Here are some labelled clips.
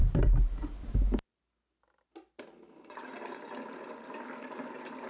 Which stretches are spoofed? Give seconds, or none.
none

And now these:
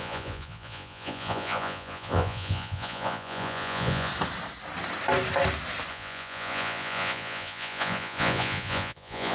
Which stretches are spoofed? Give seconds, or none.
0.0-4.1 (vocoder, Vocos); 5.9-9.3

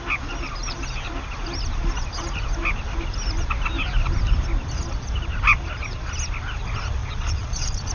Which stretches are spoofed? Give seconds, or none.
7.0-7.9 (vocoder, Vocos)

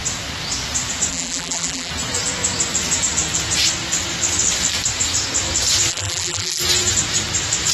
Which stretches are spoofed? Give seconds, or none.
1.1-1.9 (vocoder, BigVGAN v2); 5.9-6.6

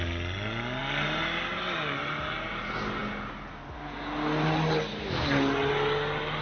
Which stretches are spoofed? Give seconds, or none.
none

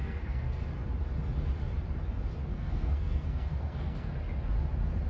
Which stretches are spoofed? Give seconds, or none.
0.0-0.6 (codec, SNAC); 2.5-4.1

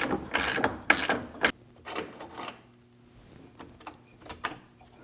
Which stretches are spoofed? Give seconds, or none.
none

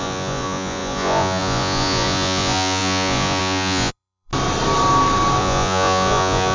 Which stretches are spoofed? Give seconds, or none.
0.0-4.3 (vocoder, Vocos); 5.4-6.5